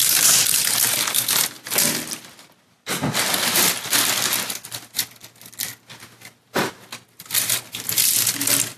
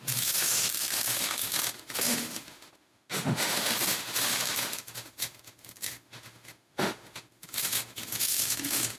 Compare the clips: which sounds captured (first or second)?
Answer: first